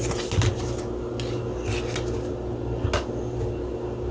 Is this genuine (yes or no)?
yes